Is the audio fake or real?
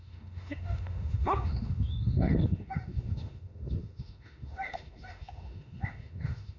fake